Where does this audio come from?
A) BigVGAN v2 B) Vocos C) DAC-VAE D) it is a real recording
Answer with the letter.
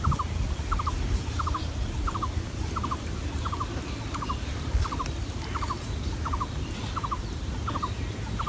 D